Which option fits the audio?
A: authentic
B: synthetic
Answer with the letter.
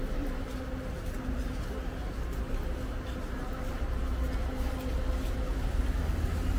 A